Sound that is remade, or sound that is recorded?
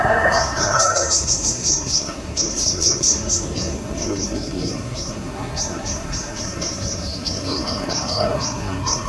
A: remade